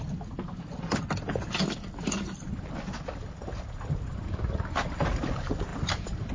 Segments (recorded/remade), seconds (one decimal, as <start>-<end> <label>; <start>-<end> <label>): 0.0-5.7 recorded; 5.7-6.3 remade